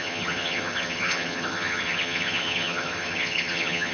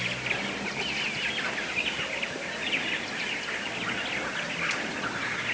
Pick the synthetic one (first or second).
first